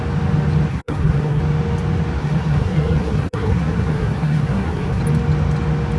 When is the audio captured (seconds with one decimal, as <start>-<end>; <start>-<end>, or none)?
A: 0.0-0.7; 1.4-2.2; 5.0-6.0